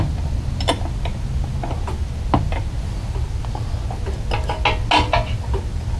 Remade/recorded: recorded